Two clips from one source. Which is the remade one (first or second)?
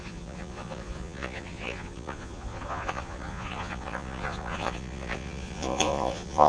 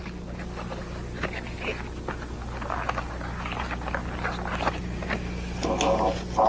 first